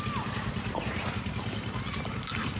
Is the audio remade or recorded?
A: recorded